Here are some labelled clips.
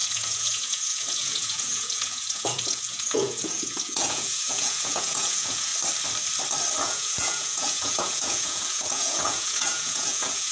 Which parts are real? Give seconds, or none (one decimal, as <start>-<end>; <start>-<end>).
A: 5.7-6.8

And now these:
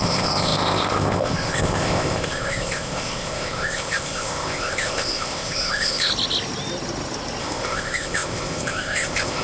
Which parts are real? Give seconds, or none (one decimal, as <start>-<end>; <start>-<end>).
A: 6.1-7.4

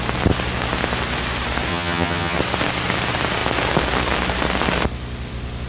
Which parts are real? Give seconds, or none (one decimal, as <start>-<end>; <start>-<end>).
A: 0.0-1.7; 2.4-5.7

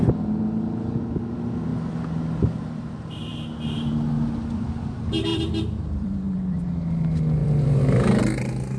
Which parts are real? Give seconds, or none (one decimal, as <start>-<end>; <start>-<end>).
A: 0.0-5.3; 6.6-7.4; 8.2-8.8

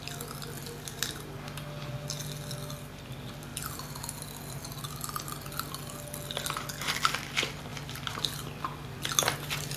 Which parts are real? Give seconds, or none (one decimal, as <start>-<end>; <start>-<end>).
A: 0.0-9.8

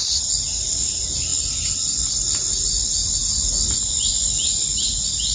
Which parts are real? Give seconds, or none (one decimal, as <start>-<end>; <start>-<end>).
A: 0.0-5.3

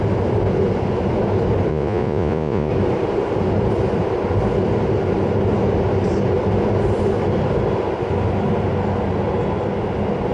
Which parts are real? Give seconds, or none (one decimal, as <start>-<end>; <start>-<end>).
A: 0.0-1.7; 2.7-10.3